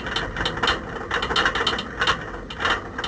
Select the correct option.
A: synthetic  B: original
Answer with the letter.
B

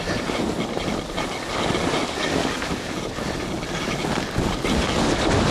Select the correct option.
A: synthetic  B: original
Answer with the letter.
B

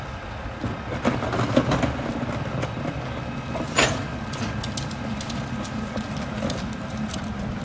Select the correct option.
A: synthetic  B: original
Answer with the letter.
B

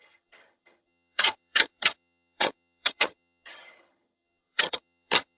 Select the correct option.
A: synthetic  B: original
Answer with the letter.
A